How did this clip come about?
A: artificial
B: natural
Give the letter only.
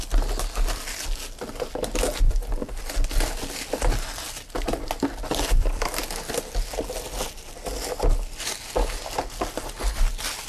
B